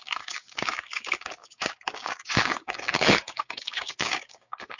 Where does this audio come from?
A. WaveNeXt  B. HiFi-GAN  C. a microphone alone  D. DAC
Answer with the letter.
D